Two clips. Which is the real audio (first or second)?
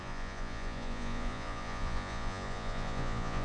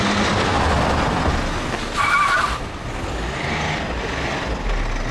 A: second